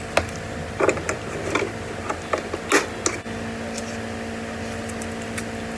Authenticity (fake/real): real